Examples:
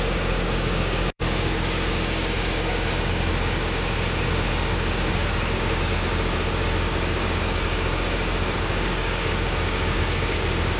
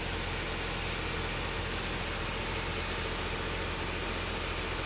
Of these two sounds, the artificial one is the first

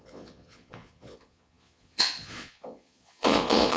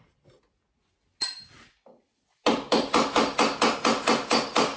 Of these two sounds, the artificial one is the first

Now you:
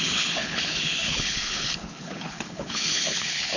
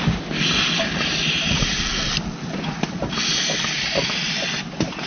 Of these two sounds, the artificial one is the first